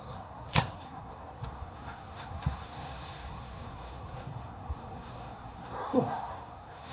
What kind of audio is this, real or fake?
fake